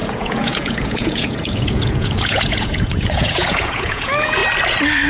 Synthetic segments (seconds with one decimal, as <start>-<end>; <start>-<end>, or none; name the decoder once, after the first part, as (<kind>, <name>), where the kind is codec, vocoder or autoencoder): 0.0-4.4 (vocoder, Vocos)